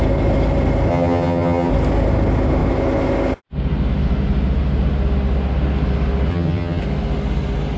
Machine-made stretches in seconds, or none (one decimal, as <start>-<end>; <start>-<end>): 0.9-1.7; 6.3-6.8